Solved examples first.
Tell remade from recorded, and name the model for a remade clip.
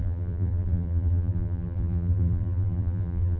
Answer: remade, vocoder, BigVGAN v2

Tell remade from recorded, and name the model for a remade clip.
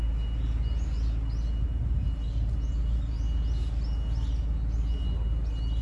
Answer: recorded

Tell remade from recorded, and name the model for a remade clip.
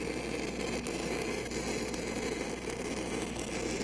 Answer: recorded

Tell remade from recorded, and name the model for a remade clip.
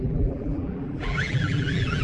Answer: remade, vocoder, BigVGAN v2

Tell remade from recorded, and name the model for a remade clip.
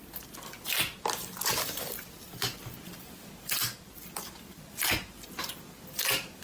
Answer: recorded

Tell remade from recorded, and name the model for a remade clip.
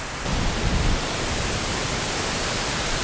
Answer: remade, vocoder, BigVGAN v2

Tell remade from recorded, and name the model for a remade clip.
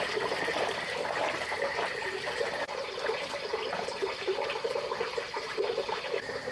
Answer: remade, vocoder, BigVGAN v2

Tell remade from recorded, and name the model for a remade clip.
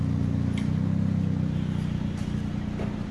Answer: recorded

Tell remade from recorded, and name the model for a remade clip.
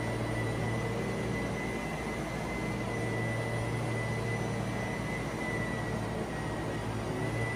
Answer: recorded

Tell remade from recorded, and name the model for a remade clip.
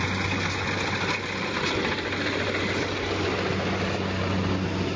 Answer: recorded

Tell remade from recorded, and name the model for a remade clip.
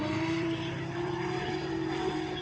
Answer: remade, vocoder, BigVGAN v2